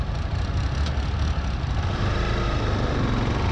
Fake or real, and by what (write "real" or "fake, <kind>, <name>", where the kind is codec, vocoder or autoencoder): real